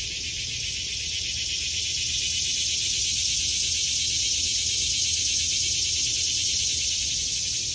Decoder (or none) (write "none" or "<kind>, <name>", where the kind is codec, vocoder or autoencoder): none